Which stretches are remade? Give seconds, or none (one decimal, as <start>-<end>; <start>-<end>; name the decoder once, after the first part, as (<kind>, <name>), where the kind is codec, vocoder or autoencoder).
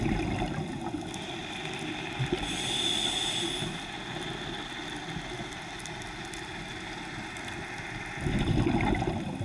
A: none